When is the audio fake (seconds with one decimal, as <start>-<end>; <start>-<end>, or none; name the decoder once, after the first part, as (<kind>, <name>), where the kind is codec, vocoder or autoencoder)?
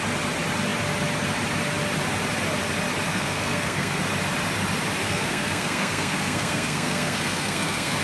3.1-4.0 (codec, SNAC); 5.0-8.0